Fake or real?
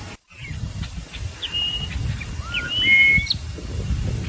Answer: real